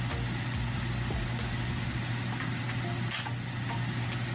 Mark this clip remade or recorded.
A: recorded